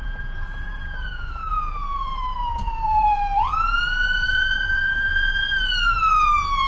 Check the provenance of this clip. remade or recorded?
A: remade